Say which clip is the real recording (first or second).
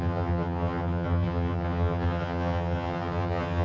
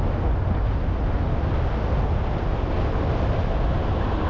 second